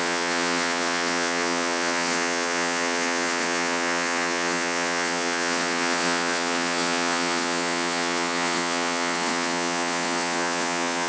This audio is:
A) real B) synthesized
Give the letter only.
B